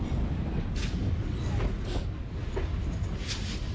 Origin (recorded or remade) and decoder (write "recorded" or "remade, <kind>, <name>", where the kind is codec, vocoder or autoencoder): recorded